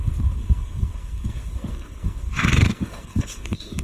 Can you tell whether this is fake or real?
fake